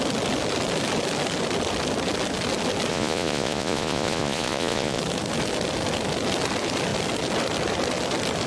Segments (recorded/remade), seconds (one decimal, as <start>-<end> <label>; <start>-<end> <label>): 0.0-2.9 recorded; 2.9-5.0 remade; 5.0-8.5 recorded